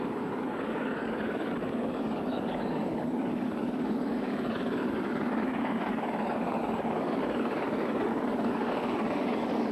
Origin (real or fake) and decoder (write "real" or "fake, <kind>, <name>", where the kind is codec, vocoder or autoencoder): fake, codec, DAC